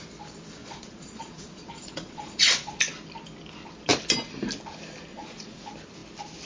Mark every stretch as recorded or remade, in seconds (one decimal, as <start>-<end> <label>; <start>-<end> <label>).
0.0-0.6 recorded; 0.6-2.8 remade; 2.8-5.1 recorded; 5.1-5.6 remade; 5.6-6.5 recorded

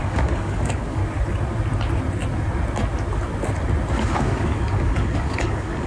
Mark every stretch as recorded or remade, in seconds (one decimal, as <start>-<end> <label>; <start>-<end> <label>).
0.0-1.0 remade; 1.0-3.9 recorded; 3.9-5.9 remade

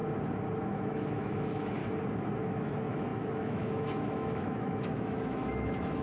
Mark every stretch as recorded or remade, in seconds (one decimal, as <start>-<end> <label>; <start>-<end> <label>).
0.0-0.6 recorded; 0.6-1.8 remade; 1.8-2.4 recorded; 2.4-6.0 remade

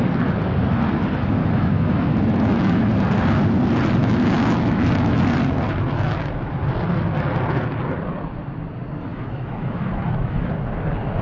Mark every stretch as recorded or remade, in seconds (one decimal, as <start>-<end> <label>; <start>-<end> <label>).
0.0-1.4 recorded; 1.4-2.9 remade; 2.9-4.0 recorded; 4.0-5.2 remade; 5.2-9.1 recorded; 9.1-10.5 remade; 10.5-11.2 recorded

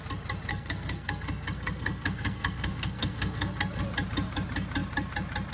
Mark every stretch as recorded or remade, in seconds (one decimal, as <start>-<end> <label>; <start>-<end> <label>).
0.0-0.5 recorded; 0.5-3.8 remade; 3.8-5.5 recorded

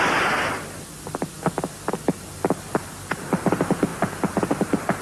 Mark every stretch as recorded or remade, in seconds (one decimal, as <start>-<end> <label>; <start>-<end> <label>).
0.0-5.0 recorded

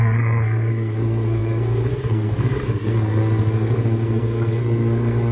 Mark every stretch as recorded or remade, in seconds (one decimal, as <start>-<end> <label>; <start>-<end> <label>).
0.0-5.3 remade

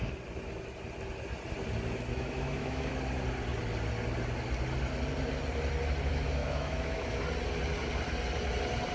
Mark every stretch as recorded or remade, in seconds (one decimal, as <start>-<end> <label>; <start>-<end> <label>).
0.0-2.1 recorded; 2.1-2.9 remade; 2.9-6.4 recorded; 6.4-7.2 remade; 7.2-8.9 recorded